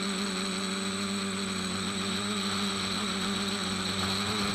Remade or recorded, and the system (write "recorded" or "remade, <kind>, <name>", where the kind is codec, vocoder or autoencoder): recorded